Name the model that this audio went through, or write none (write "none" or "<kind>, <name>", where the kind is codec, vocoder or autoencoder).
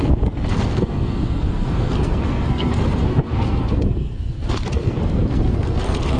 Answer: codec, SNAC